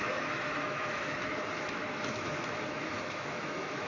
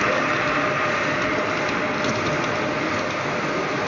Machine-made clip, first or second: first